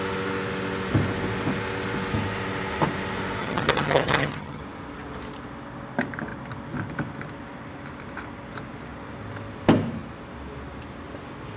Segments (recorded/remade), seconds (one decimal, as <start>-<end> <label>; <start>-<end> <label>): 0.0-3.4 recorded; 3.4-4.6 remade; 4.6-11.6 recorded